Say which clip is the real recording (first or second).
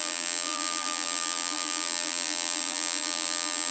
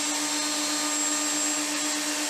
second